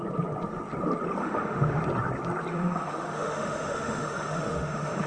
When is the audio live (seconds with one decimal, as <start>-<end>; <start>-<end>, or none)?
0.0-1.2; 1.8-2.5